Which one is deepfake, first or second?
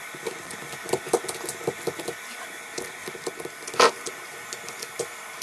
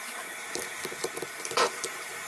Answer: second